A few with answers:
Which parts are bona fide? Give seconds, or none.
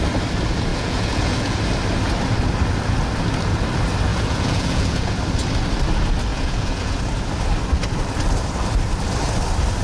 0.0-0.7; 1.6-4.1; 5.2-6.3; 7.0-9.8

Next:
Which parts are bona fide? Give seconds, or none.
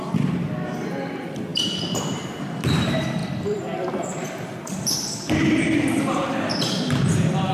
0.0-1.5; 2.0-3.2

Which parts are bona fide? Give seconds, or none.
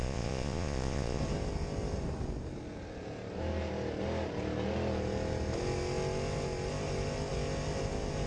1.2-8.3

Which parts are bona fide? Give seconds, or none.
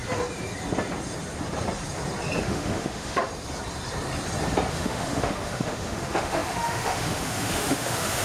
0.0-2.4; 3.3-4.7